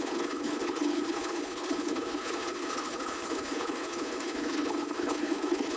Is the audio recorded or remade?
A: remade